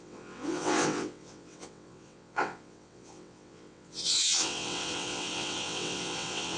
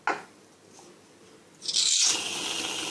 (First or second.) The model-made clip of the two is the first